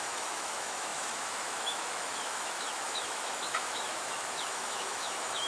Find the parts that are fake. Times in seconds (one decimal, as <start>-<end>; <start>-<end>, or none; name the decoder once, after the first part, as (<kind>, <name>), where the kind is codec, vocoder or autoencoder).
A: 0.0-5.5 (autoencoder, DAC-VAE)